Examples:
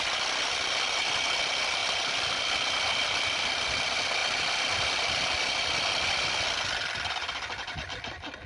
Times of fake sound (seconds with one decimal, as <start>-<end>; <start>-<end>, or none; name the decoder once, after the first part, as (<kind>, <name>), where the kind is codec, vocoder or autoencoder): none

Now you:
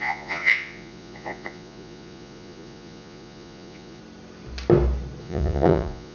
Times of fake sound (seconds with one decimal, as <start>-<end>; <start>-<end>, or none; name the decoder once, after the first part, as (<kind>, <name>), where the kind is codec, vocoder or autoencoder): 0.0-4.0 (vocoder, Vocos); 5.2-6.1

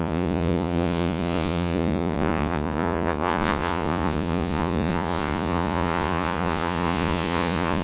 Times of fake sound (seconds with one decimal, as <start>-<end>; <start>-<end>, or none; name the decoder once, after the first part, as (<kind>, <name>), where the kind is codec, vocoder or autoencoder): 0.0-7.8 (vocoder, Vocos)

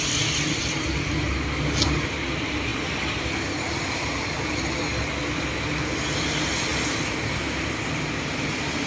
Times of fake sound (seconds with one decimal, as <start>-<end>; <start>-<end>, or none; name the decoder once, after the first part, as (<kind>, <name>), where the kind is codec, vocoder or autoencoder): none